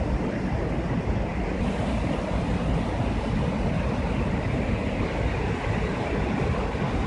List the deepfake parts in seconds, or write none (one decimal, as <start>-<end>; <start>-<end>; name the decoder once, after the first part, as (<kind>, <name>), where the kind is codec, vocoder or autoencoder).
none